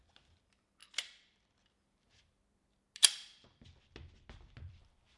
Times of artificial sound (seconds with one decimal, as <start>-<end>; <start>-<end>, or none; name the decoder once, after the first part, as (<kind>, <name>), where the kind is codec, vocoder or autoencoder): 0.8-1.7 (vocoder, BigVGAN v2); 3.0-4.8